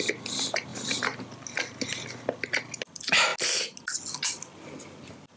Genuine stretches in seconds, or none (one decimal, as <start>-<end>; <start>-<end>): 0.0-5.4